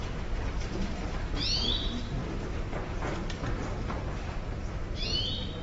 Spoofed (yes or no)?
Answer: yes